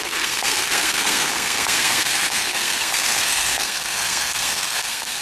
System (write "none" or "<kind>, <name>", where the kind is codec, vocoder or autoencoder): codec, SNAC